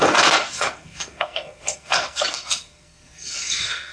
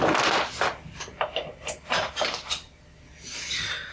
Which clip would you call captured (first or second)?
second